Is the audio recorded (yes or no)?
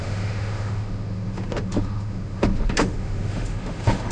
no